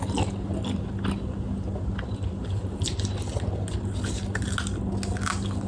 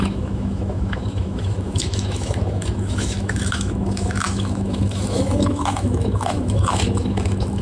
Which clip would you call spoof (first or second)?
second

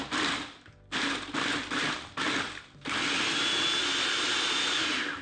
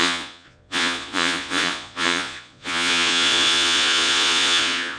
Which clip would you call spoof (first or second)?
second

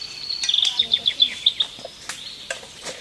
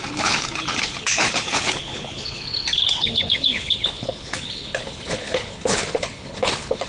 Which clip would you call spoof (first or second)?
second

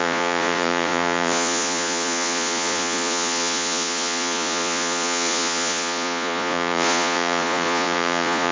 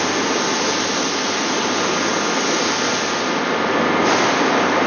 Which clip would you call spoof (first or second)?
first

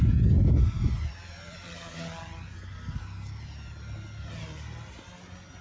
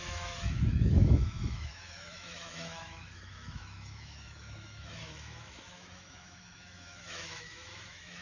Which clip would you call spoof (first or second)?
second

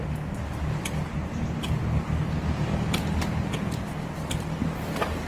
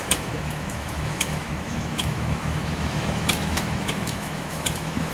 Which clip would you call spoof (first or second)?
second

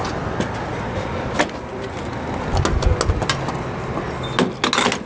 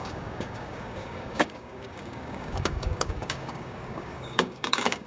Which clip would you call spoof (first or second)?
second